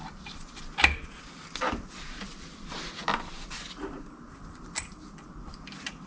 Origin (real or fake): real